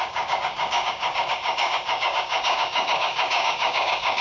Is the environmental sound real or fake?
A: fake